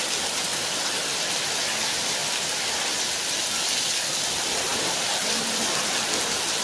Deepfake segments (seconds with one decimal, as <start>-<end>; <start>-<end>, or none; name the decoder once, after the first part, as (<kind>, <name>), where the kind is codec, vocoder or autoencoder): 0.5-1.2 (vocoder, BigVGAN v2); 2.2-3.0; 4.7-5.8